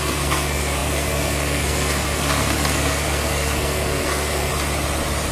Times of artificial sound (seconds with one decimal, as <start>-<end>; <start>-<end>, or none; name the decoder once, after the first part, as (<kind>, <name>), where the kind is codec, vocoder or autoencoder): 0.0-4.5 (codec, SNAC)